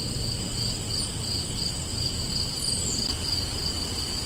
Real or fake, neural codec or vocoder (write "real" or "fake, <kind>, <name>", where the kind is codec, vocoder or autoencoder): real